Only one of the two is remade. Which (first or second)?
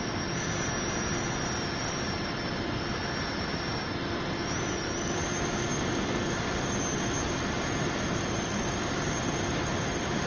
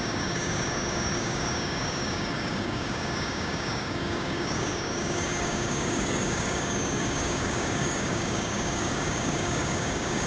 second